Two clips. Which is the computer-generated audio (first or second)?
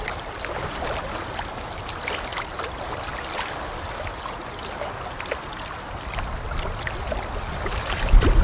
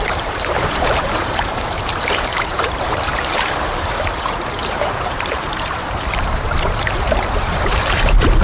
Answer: second